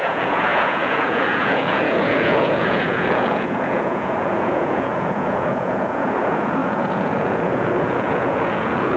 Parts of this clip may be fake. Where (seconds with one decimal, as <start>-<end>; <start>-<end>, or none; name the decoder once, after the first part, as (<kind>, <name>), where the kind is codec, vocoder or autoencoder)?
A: 0.0-9.0 (vocoder, Vocos)

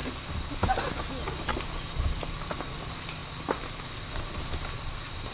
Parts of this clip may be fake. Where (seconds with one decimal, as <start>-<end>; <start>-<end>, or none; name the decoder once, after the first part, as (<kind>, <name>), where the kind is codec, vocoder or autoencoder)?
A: none

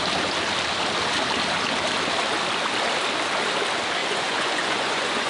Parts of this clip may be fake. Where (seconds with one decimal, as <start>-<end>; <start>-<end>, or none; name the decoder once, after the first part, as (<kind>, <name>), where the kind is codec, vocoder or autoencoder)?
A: 4.0-5.3 (vocoder, Vocos)

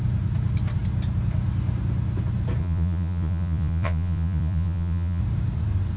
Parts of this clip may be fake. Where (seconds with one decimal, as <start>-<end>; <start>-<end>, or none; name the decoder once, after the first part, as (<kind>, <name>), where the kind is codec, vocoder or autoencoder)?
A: 2.6-5.2 (vocoder, Vocos)